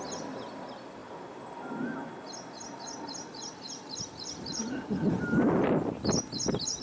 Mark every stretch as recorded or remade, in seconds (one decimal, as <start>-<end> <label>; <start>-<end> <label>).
0.0-6.8 recorded